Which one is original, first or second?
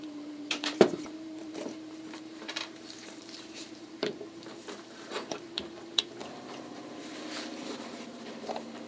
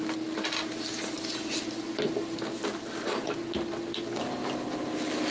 second